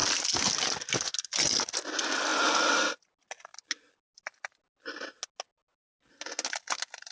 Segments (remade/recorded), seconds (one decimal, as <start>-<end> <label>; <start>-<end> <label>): 0.0-7.1 recorded